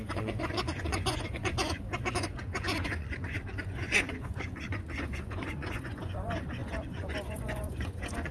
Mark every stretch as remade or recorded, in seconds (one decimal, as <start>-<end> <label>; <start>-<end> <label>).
0.0-8.3 remade

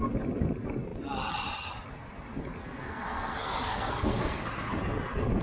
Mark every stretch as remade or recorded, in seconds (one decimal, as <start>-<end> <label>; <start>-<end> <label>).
0.0-2.6 recorded; 2.6-4.4 remade; 4.4-5.4 recorded

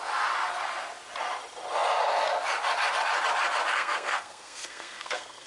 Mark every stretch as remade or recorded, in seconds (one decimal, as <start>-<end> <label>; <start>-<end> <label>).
0.0-3.7 recorded; 3.7-5.5 remade

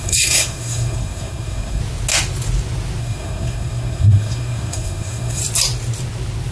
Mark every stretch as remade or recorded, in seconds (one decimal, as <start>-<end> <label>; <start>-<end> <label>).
0.0-1.8 remade; 1.8-3.0 recorded; 3.0-5.4 remade; 5.4-6.5 recorded

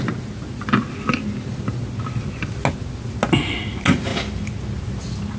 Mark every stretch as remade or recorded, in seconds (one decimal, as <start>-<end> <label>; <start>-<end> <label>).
0.0-5.4 recorded